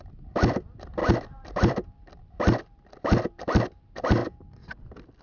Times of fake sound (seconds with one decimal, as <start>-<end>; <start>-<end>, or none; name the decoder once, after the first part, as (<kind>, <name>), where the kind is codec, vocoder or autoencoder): 0.0-4.2 (vocoder, BigVGAN v2)